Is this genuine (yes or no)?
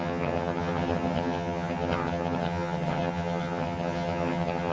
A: no